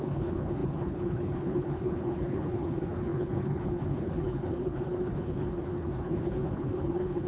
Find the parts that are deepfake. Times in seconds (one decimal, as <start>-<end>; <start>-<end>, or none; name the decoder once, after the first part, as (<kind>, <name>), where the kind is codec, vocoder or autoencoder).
0.0-7.3 (codec, HILCodec)